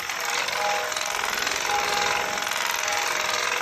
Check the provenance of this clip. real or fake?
real